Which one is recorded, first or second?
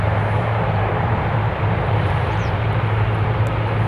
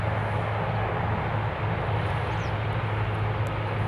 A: second